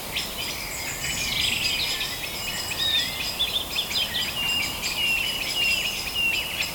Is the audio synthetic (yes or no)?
no